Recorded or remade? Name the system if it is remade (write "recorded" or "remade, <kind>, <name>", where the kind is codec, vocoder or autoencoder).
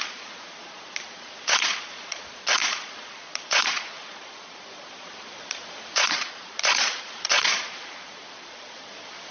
remade, vocoder, Vocos